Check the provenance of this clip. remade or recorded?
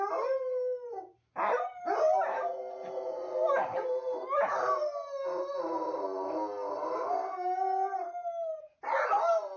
recorded